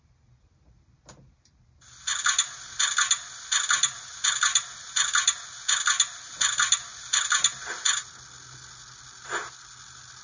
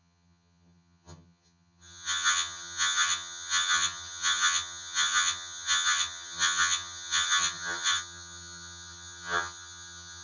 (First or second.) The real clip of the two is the first